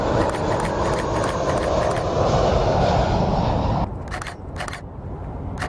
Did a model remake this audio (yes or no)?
no